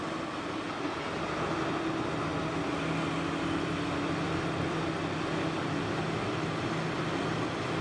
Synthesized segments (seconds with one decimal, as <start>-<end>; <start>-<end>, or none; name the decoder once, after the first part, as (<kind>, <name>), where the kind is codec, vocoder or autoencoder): none